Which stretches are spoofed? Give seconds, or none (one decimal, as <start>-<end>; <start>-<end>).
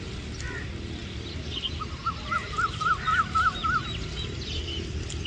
none